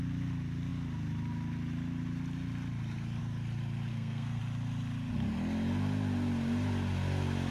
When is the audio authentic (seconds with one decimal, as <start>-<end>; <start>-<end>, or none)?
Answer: 0.0-3.9; 4.4-7.5